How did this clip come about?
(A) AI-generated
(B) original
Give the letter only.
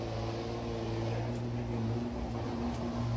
B